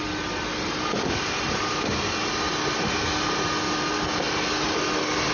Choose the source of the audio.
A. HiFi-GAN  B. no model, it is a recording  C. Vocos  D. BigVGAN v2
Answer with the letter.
B